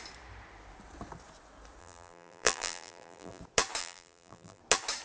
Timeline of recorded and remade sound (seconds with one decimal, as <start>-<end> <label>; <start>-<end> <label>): 0.0-1.8 recorded; 1.8-3.4 remade; 3.4-3.8 recorded; 3.8-4.6 remade; 4.6-5.0 recorded